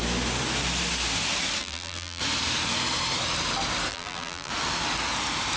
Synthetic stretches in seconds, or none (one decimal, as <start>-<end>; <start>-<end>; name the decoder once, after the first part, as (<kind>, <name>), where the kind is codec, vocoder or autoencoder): 1.6-2.2 (vocoder, BigVGAN v2); 3.9-4.5